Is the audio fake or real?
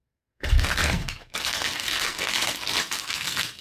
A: fake